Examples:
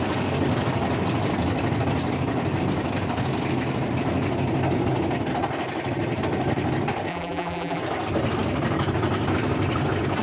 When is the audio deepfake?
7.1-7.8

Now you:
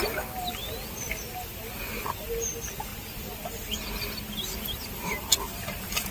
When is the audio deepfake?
none

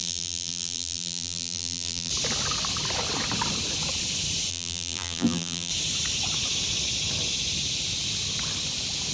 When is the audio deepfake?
0.0-2.1; 4.5-5.7

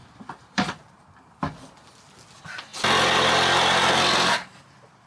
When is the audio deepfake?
0.0-1.0

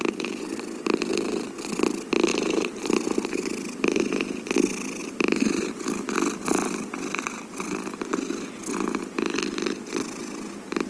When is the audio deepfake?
2.3-3.4; 5.0-5.7

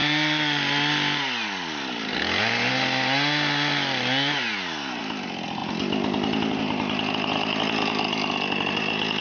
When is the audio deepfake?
none

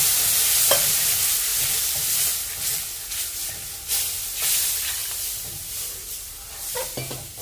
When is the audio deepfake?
1.5-3.5; 5.0-5.6

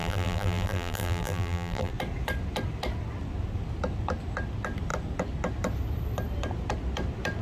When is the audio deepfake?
0.0-1.9